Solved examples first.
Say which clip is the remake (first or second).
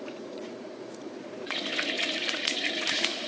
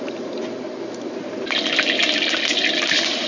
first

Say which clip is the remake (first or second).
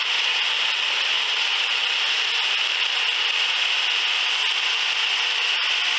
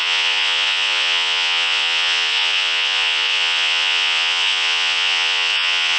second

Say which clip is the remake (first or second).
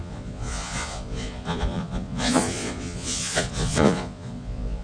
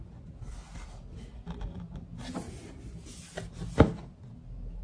first